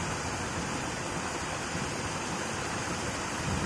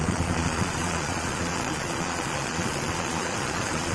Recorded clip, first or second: first